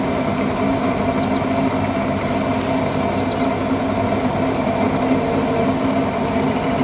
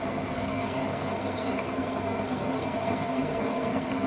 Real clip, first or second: first